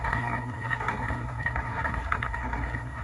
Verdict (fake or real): fake